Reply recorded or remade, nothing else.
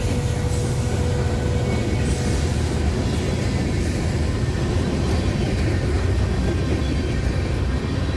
recorded